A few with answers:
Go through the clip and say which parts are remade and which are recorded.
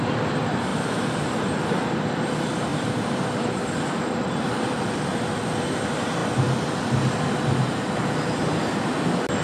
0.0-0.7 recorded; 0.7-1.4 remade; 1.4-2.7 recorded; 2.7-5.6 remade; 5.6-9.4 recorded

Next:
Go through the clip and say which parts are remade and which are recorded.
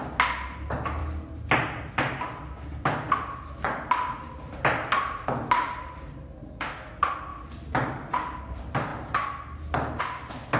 0.0-10.6 recorded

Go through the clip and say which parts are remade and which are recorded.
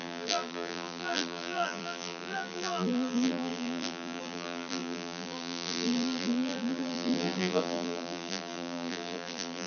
0.0-9.7 remade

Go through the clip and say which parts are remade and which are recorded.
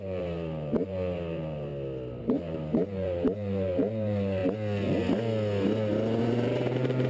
0.0-1.7 remade; 1.7-2.2 recorded; 2.2-4.4 remade; 4.4-6.2 recorded; 6.2-7.1 remade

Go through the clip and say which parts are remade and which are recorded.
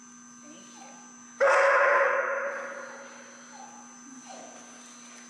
0.0-5.3 recorded